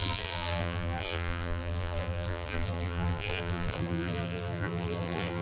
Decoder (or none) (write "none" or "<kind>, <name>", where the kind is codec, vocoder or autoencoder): vocoder, BigVGAN v2